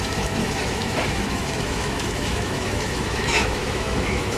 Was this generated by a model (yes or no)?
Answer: yes